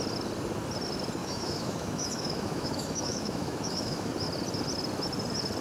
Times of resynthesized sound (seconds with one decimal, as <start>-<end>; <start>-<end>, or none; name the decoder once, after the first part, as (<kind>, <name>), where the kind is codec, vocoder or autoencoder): 1.2-4.1 (autoencoder, DAC-VAE)